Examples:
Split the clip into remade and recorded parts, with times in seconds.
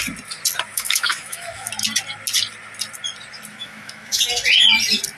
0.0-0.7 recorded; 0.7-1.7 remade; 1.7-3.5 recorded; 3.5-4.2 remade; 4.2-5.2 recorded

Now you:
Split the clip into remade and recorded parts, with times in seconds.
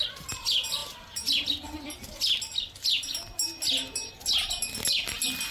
0.0-5.5 recorded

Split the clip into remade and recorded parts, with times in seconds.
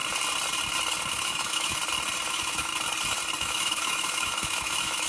0.0-1.1 recorded; 1.1-1.8 remade; 1.8-2.3 recorded; 2.3-2.7 remade; 2.7-3.4 recorded; 3.4-5.1 remade